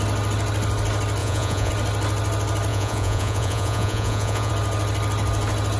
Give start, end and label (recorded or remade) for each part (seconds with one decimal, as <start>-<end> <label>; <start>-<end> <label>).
0.0-1.2 recorded; 1.2-1.7 remade; 1.7-2.7 recorded; 2.7-4.5 remade; 4.5-5.8 recorded